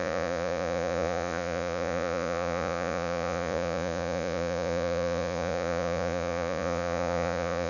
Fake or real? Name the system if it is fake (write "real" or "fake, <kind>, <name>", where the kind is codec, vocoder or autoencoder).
fake, vocoder, Vocos